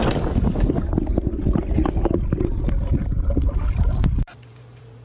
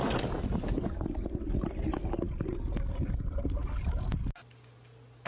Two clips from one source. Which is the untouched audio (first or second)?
second